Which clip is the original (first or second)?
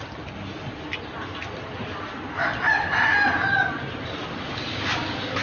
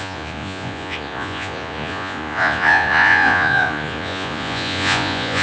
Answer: first